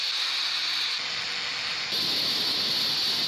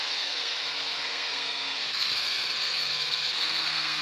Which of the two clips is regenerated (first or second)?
second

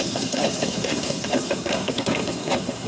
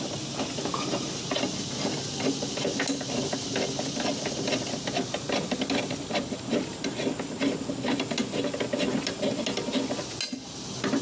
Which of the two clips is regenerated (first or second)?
first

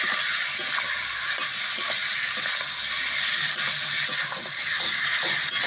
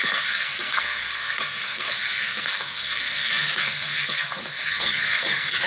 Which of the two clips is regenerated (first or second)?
second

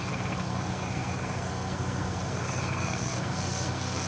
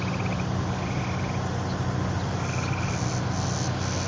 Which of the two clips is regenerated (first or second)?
first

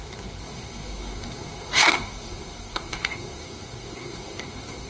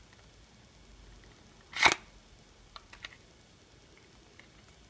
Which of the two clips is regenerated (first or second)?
first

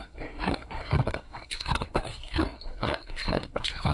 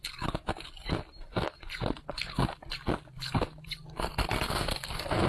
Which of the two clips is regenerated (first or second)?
first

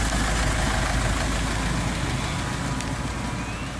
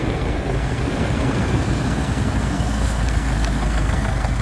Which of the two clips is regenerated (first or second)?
second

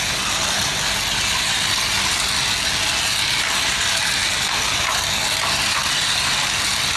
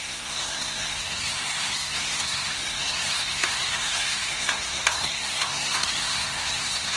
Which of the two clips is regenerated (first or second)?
second